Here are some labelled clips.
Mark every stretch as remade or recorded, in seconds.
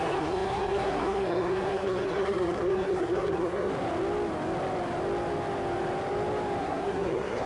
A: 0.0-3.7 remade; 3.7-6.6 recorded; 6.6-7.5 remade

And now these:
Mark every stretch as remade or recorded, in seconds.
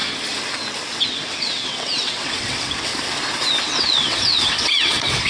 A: 0.0-1.0 recorded; 1.0-2.9 remade; 2.9-3.6 recorded; 3.6-5.3 remade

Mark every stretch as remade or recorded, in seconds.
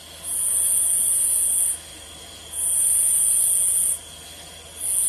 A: 0.0-1.9 recorded; 1.9-3.4 remade; 3.4-5.1 recorded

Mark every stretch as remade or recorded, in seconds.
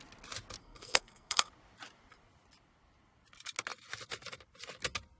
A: 0.0-0.6 recorded; 0.6-1.5 remade; 1.5-5.2 recorded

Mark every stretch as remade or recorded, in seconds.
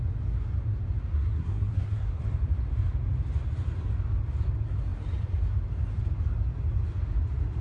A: 0.0-1.1 recorded; 1.1-2.2 remade; 2.2-7.6 recorded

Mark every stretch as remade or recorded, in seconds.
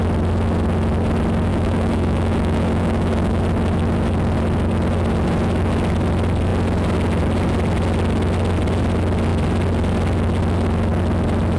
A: 0.0-1.5 recorded; 1.5-3.4 remade; 3.4-11.6 recorded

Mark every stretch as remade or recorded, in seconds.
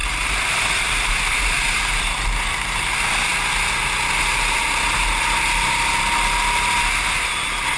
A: 0.0-1.8 remade; 1.8-7.8 recorded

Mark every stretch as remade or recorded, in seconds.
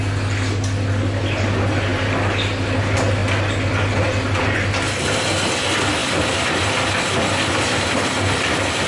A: 0.0-8.9 recorded